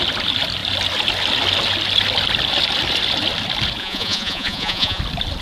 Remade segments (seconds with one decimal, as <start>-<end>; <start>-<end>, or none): 3.8-5.0